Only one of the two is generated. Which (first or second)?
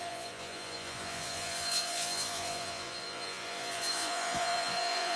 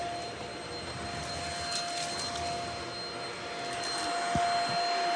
first